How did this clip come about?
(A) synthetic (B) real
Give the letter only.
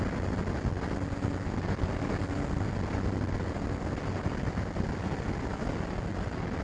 B